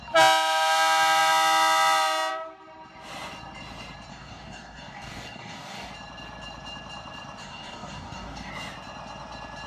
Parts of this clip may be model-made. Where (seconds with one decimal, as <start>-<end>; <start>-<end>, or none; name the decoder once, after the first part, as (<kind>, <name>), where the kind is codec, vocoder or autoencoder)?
4.1-5.9 (codec, DAC); 7.4-8.5

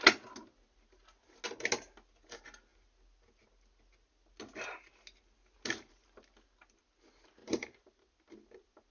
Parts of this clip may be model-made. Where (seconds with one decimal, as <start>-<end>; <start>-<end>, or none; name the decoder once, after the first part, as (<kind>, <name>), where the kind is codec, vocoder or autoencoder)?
7.4-8.0 (vocoder, BigVGAN v2)

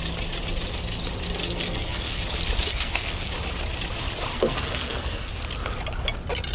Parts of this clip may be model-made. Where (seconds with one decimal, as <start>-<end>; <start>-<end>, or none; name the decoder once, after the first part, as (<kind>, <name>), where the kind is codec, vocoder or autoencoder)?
1.4-2.2 (codec, SNAC); 2.7-3.3; 4.3-5.3